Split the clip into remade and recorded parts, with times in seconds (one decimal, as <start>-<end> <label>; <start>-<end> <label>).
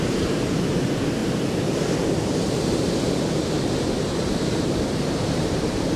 0.0-1.2 remade; 1.2-3.9 recorded; 3.9-6.0 remade